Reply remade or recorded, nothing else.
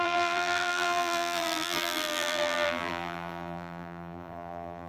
remade